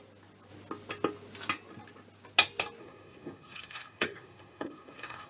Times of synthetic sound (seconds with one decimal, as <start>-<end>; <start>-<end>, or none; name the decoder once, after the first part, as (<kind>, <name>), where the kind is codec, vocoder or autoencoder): 2.8-5.3 (codec, SNAC)

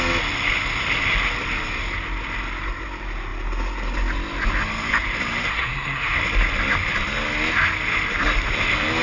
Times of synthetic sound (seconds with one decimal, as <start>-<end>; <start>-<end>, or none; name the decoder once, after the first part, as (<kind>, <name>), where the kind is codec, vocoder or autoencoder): 5.5-6.2 (codec, SNAC)

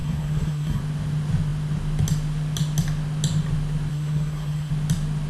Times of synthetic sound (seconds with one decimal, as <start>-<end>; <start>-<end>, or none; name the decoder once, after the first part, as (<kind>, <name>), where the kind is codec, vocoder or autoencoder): 0.0-0.8 (codec, SNAC); 3.9-4.7

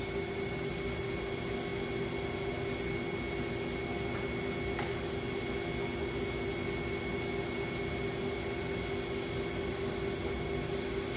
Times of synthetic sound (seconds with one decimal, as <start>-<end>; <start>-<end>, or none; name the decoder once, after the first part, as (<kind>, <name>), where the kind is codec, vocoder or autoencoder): none